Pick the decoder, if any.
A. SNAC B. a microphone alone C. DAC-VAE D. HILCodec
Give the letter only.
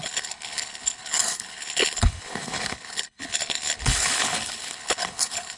D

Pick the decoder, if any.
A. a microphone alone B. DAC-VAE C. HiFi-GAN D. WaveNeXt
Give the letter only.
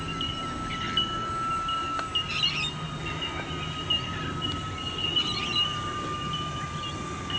A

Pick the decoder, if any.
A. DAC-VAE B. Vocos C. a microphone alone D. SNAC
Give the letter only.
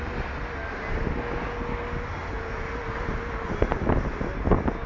C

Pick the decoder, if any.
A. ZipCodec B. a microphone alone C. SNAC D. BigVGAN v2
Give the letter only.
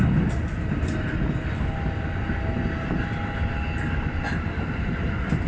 B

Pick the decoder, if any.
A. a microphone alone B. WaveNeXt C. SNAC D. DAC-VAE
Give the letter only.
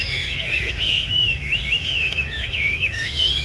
D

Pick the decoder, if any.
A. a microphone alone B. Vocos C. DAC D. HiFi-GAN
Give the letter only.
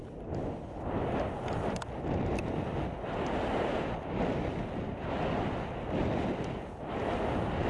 A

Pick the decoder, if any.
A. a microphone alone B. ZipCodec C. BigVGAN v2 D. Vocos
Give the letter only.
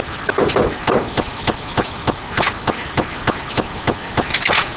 A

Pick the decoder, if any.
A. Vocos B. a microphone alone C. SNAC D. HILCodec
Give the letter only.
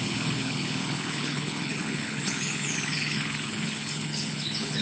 D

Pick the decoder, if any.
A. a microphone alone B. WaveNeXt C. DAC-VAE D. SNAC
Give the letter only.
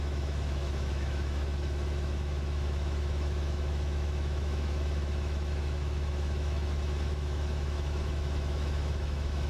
C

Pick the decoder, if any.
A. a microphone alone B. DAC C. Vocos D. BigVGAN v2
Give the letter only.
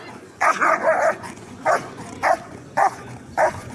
C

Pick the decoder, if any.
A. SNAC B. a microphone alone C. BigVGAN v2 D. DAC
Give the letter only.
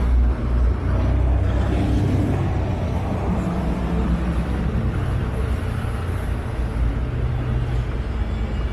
B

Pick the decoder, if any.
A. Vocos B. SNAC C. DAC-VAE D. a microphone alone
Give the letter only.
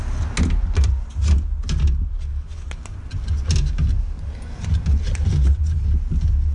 D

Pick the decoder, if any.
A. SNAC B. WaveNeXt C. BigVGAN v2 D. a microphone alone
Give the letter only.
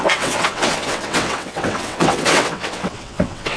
B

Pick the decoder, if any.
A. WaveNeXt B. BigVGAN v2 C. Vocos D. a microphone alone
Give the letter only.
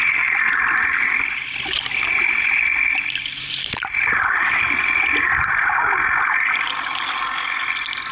D